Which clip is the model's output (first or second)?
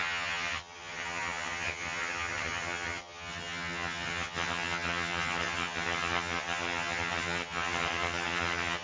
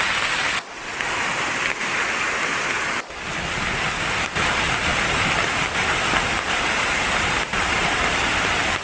first